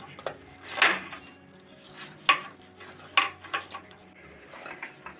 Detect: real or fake real